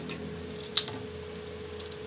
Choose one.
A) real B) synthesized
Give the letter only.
A